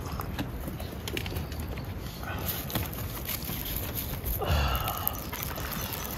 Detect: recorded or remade recorded